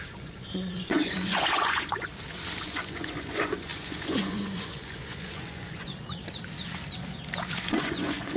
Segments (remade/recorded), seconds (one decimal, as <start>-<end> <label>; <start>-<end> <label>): 0.0-2.1 remade; 2.1-2.6 recorded; 2.6-5.9 remade; 5.9-7.7 recorded; 7.7-8.4 remade